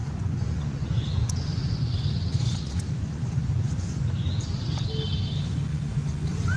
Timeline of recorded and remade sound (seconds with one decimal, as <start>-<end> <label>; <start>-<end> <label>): 0.0-4.0 remade; 4.0-5.7 recorded; 5.7-6.6 remade